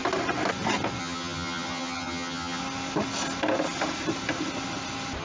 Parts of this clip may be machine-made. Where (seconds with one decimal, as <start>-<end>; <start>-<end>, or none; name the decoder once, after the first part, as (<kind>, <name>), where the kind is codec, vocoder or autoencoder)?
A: 1.0-2.6 (vocoder, HiFi-GAN)